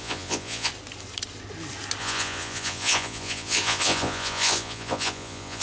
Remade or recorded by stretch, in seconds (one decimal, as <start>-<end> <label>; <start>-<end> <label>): 0.0-0.7 remade; 0.7-2.0 recorded; 2.0-5.6 remade